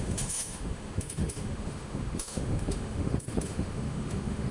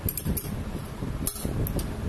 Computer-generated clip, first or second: first